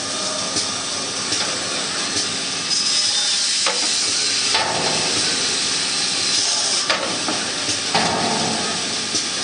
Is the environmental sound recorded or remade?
recorded